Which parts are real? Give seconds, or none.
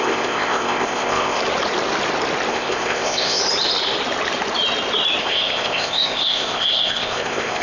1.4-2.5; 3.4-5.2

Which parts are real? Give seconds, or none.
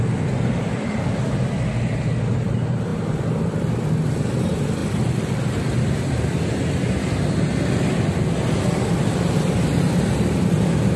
0.0-11.0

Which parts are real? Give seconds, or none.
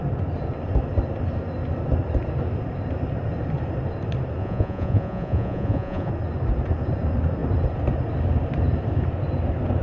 0.0-4.4; 6.1-9.8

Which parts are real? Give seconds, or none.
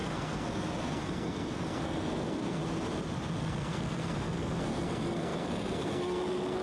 2.6-3.4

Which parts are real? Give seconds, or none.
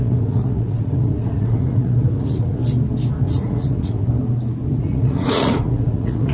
2.6-3.2; 4.1-4.8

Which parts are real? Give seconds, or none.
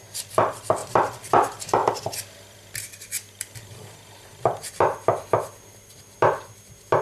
0.0-1.8; 6.0-7.0